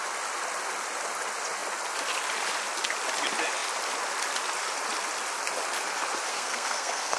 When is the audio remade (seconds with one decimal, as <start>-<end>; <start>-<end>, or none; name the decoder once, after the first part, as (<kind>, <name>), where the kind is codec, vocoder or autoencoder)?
6.3-7.2 (codec, SNAC)